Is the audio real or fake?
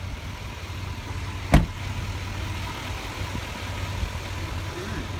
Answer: real